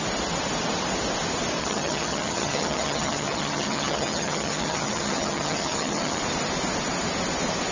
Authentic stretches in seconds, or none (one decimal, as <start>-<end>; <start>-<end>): 0.0-1.6; 6.2-7.7